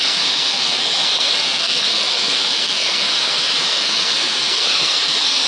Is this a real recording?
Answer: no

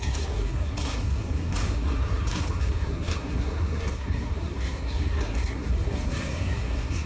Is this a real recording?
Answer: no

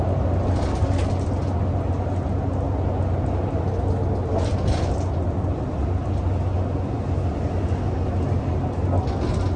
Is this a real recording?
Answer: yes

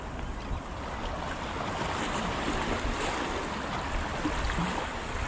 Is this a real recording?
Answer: yes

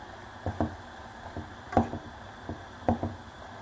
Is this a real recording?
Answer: yes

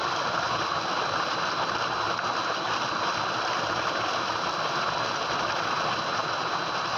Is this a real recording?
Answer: yes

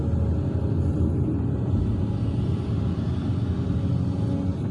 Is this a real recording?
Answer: yes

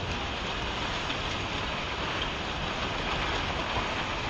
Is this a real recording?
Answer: yes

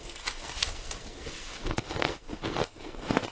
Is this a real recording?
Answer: no